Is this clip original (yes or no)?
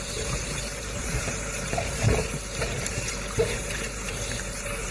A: no